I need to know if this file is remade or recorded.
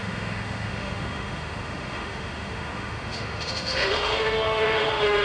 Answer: remade